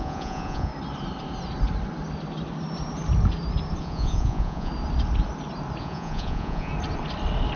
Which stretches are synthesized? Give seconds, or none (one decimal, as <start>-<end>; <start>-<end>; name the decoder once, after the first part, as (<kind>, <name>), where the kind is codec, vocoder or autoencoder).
0.0-0.7 (vocoder, Vocos); 3.8-4.7; 5.8-6.7